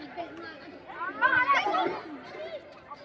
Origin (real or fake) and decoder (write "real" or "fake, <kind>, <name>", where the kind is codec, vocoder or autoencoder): real